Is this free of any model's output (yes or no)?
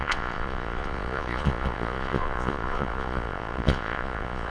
no